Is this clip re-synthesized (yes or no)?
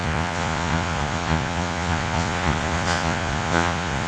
yes